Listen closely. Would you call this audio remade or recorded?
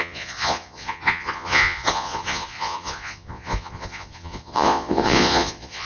remade